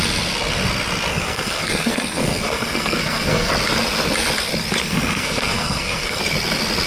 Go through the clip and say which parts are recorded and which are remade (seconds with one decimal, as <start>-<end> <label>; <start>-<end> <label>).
0.0-1.1 recorded; 1.1-3.5 remade; 3.5-4.8 recorded; 4.8-6.2 remade; 6.2-6.9 recorded